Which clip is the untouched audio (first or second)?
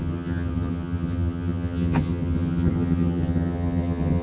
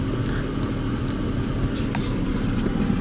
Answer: second